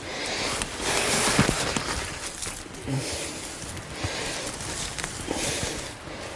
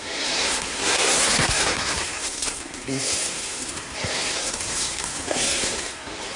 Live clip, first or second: first